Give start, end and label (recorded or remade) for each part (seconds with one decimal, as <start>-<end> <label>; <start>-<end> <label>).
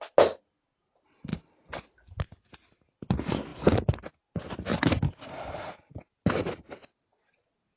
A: 0.0-7.8 recorded